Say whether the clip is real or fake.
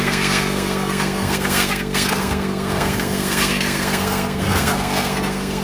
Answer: fake